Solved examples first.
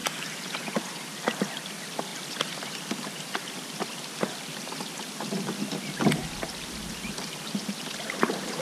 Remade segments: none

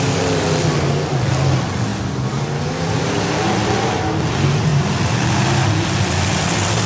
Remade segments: none

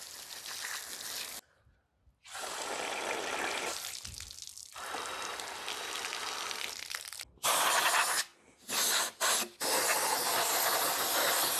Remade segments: none